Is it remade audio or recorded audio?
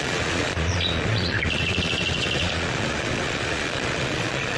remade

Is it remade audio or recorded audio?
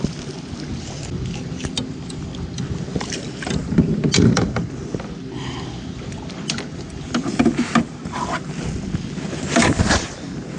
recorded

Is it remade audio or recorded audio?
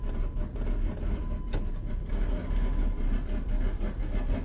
recorded